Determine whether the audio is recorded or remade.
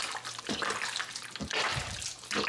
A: recorded